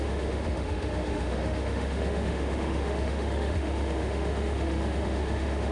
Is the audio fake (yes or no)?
yes